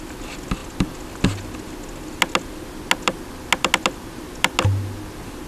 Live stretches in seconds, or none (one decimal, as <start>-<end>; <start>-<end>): 0.0-5.5